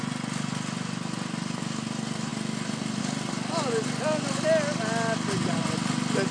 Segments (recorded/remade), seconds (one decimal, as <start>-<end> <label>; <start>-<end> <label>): 0.0-6.3 recorded